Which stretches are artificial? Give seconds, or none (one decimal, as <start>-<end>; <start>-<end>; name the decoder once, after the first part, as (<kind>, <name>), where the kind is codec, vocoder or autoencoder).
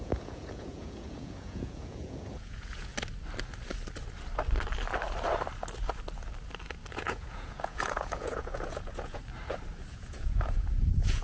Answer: 0.0-2.9 (vocoder, Vocos); 6.9-9.2; 9.9-11.2